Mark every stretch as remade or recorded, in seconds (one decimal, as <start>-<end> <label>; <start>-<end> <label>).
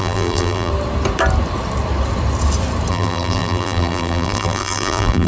0.0-0.7 remade; 0.7-2.9 recorded; 2.9-5.3 remade